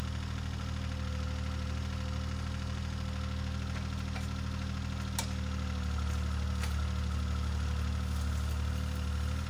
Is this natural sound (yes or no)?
yes